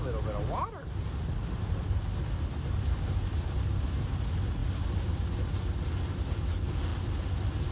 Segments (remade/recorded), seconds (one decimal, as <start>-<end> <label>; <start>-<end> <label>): 0.0-7.7 recorded